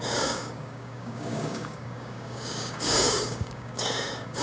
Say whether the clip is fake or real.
fake